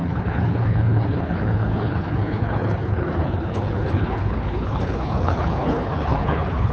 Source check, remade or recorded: remade